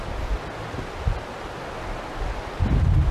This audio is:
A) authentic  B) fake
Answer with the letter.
A